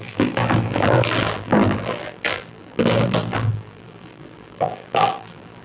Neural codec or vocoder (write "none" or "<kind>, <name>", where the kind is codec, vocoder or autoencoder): vocoder, BigVGAN v2